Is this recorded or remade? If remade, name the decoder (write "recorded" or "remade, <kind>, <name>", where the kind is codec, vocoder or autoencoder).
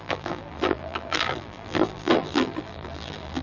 remade, vocoder, BigVGAN v2